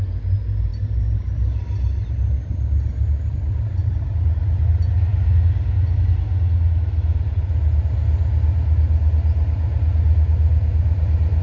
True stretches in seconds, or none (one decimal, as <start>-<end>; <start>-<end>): 0.0-11.4